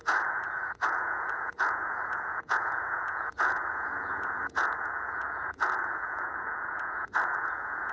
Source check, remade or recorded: remade